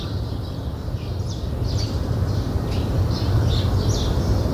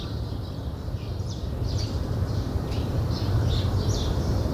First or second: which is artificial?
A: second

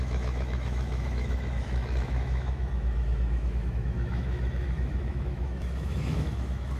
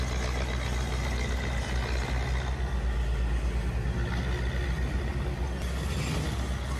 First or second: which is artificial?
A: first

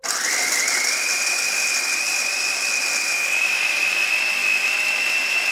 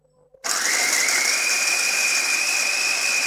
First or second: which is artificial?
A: second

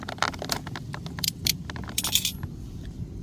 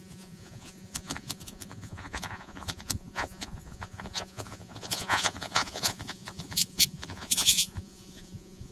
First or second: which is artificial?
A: second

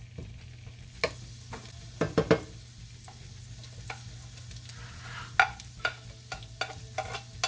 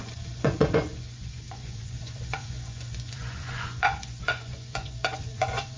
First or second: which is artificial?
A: second